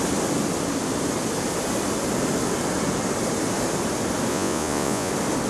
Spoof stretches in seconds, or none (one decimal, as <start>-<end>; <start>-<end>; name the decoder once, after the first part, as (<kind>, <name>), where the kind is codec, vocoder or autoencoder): 4.3-5.1 (vocoder, Vocos)